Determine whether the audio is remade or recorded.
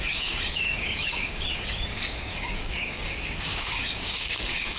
remade